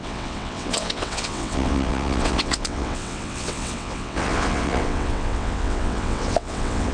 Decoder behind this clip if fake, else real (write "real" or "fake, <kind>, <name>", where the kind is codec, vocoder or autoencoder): fake, vocoder, WaveNeXt